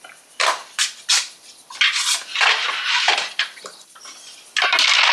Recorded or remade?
recorded